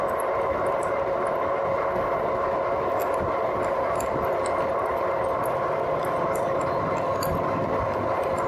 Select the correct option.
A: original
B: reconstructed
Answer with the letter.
A